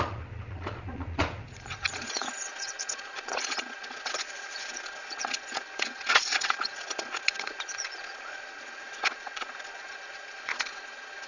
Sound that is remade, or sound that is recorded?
remade